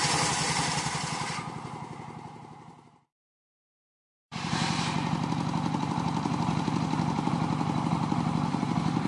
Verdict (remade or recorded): remade